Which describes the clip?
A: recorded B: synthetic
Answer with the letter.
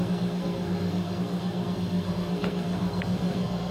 B